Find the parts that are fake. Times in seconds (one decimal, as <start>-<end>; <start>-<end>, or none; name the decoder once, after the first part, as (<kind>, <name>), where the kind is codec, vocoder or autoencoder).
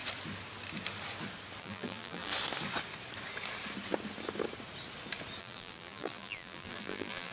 1.6-2.3 (vocoder, BigVGAN v2); 5.4-7.3